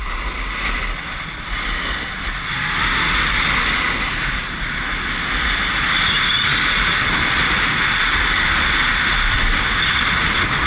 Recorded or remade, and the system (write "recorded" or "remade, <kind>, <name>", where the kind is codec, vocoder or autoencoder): recorded